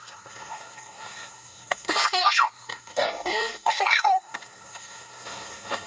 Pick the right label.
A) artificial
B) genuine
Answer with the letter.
A